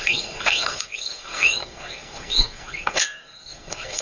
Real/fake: fake